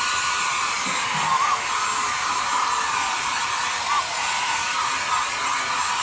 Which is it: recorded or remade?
recorded